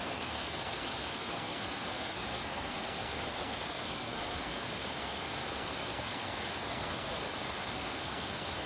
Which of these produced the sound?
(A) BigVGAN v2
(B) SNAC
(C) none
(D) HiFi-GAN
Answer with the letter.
B